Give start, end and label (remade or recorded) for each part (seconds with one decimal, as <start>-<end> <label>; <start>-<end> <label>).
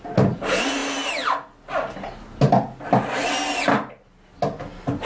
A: 0.0-5.1 recorded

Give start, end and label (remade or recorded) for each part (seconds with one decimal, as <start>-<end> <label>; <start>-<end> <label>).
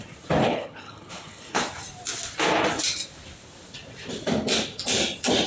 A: 0.0-0.5 recorded; 0.5-1.6 remade; 1.6-5.5 recorded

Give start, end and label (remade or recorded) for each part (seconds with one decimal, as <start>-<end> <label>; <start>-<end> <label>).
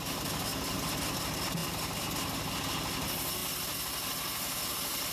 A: 0.0-5.1 recorded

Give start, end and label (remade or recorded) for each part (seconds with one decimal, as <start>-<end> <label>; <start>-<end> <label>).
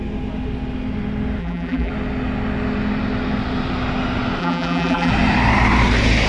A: 0.0-1.4 recorded; 1.4-1.9 remade; 1.9-4.4 recorded; 4.4-5.1 remade; 5.1-6.3 recorded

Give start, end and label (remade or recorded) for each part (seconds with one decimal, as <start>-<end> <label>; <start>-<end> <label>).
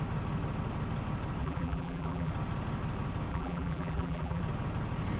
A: 0.0-1.4 recorded; 1.4-2.3 remade; 2.3-3.3 recorded; 3.3-4.4 remade; 4.4-5.2 recorded